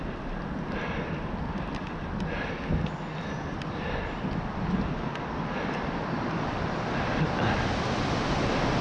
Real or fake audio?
real